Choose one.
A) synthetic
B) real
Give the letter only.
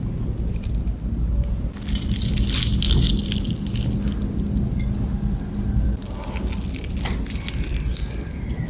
B